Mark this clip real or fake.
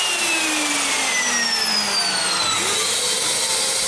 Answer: real